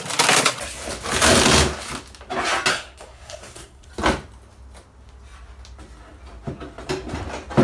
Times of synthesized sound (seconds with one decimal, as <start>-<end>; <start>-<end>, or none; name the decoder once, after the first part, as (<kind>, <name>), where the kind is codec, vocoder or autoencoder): 2.7-3.9 (codec, SNAC)